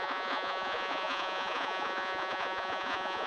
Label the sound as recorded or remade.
remade